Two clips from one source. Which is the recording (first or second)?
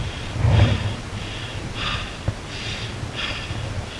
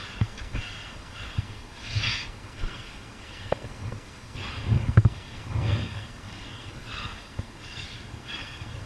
first